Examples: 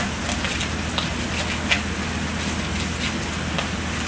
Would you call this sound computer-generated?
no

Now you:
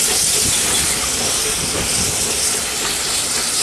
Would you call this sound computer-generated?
no